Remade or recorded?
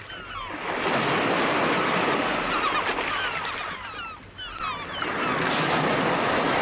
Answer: recorded